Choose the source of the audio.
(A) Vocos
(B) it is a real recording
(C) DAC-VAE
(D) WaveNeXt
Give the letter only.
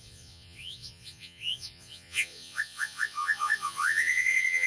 A